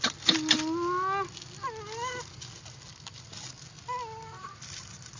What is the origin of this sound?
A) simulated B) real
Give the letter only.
B